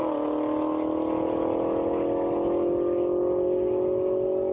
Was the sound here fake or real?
real